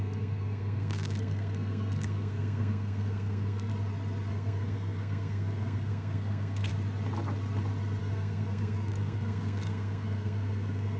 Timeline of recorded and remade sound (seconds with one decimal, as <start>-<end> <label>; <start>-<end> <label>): 0.0-3.7 remade; 3.7-4.3 recorded; 4.3-6.7 remade; 6.7-8.0 recorded; 8.0-11.0 remade